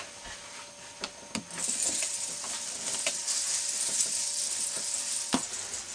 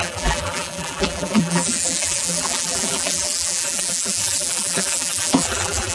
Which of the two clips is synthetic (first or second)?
second